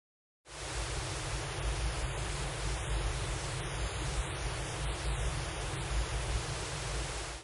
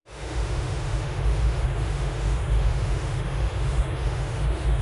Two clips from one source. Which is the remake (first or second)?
second